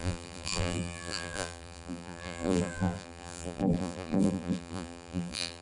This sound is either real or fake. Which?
fake